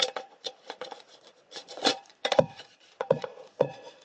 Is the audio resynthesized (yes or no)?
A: yes